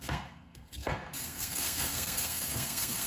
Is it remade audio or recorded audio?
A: remade